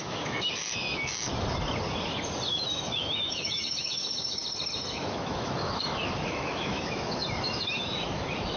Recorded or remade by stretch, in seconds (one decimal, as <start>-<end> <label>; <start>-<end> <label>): 0.0-1.3 remade; 1.3-2.5 recorded; 2.5-4.4 remade; 4.4-5.0 recorded; 5.0-8.6 remade